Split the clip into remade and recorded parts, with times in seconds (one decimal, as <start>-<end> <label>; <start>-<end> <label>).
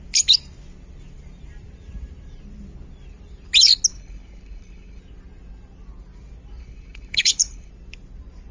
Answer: 0.0-3.9 recorded; 3.9-5.0 remade; 5.0-6.6 recorded; 6.6-7.7 remade; 7.7-8.5 recorded